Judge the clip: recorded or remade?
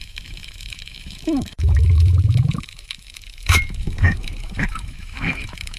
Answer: remade